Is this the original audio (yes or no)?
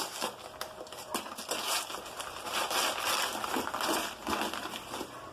yes